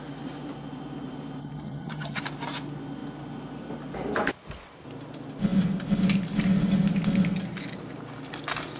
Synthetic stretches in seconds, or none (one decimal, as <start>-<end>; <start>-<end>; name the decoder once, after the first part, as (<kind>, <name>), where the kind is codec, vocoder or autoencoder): 1.4-2.2 (vocoder, HiFi-GAN)